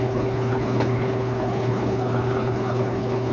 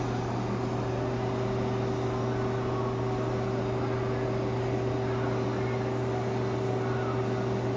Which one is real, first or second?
second